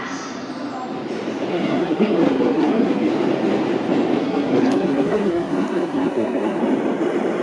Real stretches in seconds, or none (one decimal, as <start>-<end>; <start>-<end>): 0.0-1.5; 3.1-4.2; 6.6-7.4